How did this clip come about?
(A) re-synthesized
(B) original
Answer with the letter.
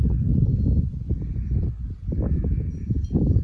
B